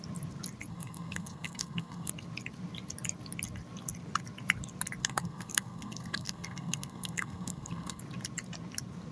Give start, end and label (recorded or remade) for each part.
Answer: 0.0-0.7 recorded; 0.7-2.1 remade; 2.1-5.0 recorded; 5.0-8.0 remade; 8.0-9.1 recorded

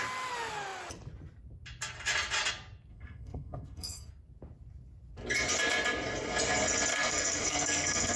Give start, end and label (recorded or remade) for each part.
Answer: 0.0-2.9 recorded; 2.9-4.1 remade; 4.1-6.9 recorded; 6.9-8.2 remade

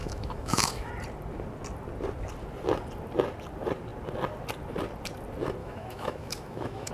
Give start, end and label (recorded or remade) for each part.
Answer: 0.0-0.9 remade; 0.9-5.6 recorded; 5.6-6.9 remade

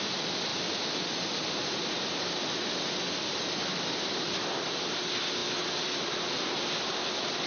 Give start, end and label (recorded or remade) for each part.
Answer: 0.0-0.5 remade; 0.5-3.7 recorded; 3.7-7.5 remade